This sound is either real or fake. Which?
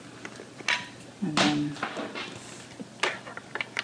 real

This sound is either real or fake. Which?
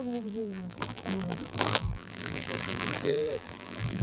fake